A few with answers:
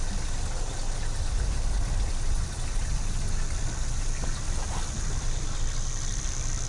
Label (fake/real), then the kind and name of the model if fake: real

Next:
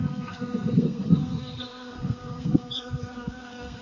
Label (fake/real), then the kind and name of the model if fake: fake, codec, SNAC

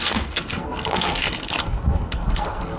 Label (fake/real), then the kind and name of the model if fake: fake, codec, SNAC